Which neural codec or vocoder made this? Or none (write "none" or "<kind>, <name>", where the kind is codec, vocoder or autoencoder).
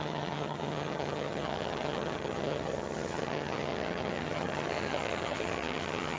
vocoder, HiFi-GAN